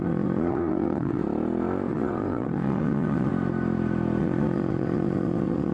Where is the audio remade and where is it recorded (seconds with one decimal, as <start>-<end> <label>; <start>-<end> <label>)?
0.0-1.2 remade; 1.2-1.9 recorded; 1.9-3.3 remade; 3.3-4.2 recorded; 4.2-5.7 remade